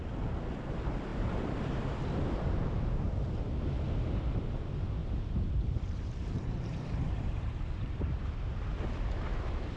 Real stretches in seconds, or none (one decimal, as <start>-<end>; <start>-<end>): 0.0-1.1; 1.7-5.0; 8.2-9.8